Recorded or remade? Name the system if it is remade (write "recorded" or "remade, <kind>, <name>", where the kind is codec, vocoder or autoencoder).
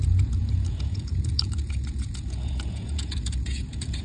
remade, vocoder, Vocos